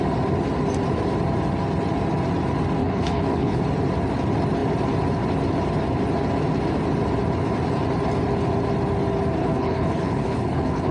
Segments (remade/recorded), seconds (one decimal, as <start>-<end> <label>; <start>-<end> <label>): 0.0-2.8 recorded; 2.8-3.6 remade; 3.6-9.4 recorded; 9.4-10.9 remade